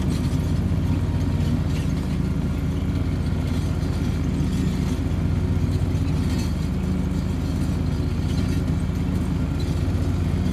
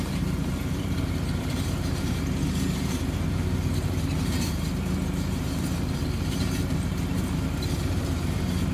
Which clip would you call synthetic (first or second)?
second